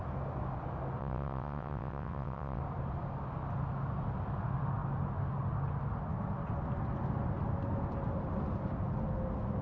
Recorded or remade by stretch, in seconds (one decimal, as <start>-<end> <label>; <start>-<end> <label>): 0.0-1.0 recorded; 1.0-2.6 remade; 2.6-9.6 recorded